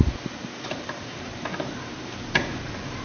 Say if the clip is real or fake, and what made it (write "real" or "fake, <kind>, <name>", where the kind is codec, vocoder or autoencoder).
real